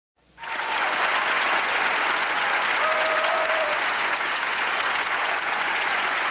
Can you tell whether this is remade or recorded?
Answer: remade